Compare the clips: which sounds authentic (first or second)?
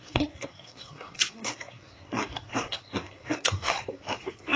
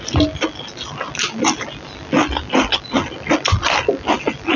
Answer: second